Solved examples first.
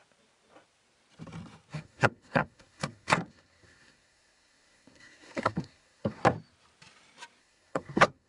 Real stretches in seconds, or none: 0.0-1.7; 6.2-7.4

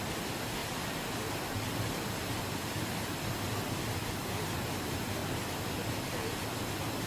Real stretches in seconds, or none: 0.0-7.1

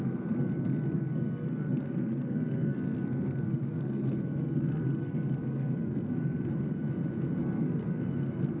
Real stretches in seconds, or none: 6.5-7.4

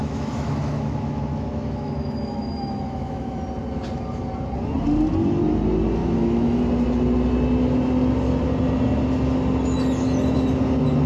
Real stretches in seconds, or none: 3.4-6.0; 6.6-11.1

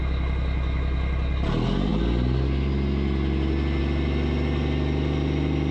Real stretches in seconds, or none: 0.0-5.7